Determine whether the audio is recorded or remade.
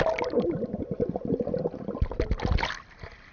recorded